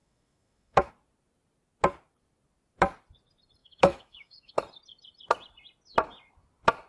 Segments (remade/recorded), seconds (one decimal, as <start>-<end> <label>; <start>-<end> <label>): 0.0-0.9 remade; 0.9-3.6 recorded; 3.6-4.5 remade; 4.5-6.9 recorded